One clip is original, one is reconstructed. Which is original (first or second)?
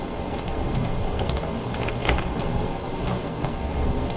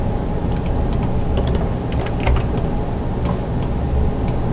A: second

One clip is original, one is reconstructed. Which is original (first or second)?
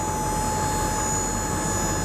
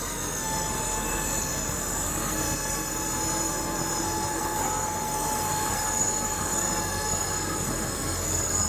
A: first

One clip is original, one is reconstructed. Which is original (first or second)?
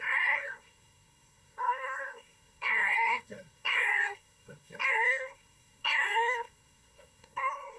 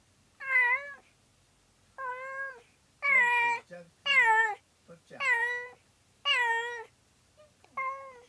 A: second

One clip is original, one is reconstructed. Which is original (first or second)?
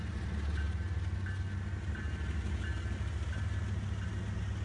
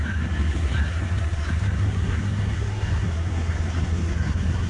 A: first